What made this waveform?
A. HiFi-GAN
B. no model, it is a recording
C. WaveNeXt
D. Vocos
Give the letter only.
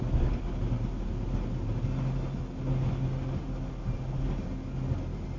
B